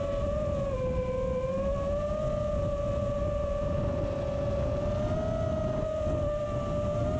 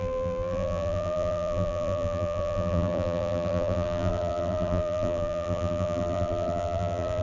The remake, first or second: second